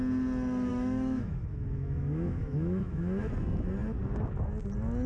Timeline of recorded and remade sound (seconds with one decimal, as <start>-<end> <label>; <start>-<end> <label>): 0.0-0.7 recorded; 0.7-3.3 remade; 3.3-5.1 recorded